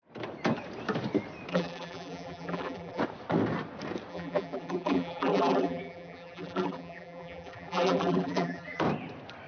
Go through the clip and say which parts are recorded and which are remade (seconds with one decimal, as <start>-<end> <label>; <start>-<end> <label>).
0.0-1.5 recorded; 1.5-3.0 remade; 3.0-4.1 recorded; 4.1-8.8 remade; 8.8-9.5 recorded